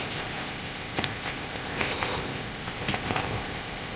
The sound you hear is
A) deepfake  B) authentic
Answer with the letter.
A